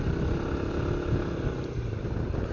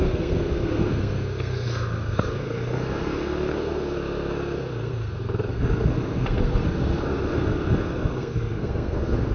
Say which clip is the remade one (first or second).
second